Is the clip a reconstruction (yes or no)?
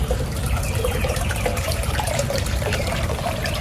yes